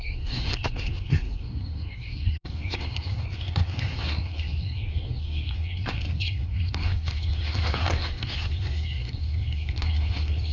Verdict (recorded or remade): remade